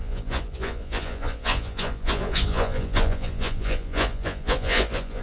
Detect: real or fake fake